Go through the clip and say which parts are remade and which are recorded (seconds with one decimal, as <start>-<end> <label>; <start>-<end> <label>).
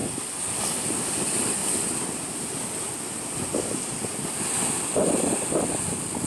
0.0-6.3 recorded